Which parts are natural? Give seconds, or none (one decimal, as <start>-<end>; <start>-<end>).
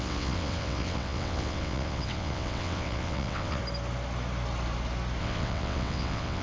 3.6-5.2